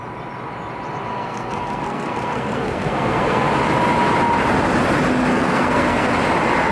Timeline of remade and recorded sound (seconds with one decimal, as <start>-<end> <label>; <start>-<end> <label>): 0.0-1.1 recorded; 1.1-3.5 remade; 3.5-5.3 recorded; 5.3-6.1 remade; 6.1-6.7 recorded